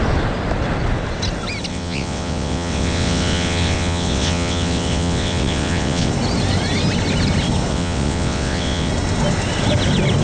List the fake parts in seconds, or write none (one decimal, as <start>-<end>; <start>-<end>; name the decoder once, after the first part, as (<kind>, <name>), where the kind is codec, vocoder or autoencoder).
1.7-6.1 (vocoder, WaveNeXt); 7.7-8.9